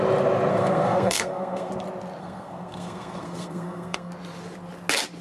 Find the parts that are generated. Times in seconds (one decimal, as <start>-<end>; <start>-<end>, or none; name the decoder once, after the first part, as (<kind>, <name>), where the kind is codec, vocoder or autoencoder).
0.5-1.7 (codec, SNAC); 2.2-4.1